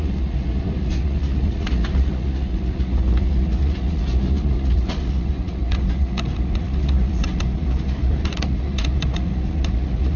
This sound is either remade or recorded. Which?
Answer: remade